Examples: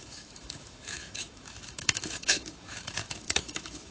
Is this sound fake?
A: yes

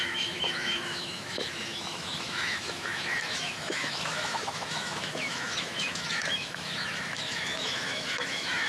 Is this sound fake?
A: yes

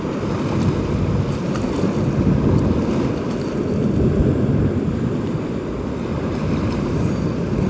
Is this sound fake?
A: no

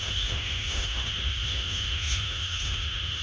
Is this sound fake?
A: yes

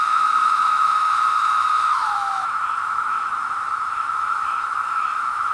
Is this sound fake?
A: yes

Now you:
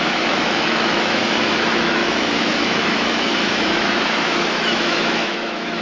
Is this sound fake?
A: yes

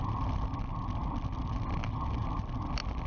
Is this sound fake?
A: no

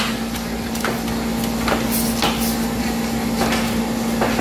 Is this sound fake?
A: no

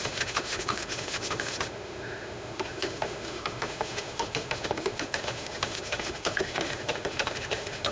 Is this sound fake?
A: yes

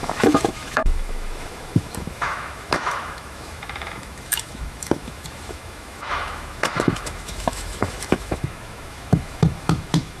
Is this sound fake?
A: yes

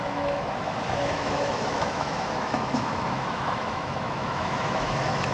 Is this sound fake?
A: yes